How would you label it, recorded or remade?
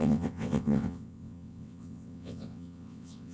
remade